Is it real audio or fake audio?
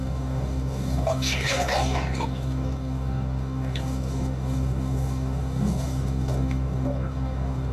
fake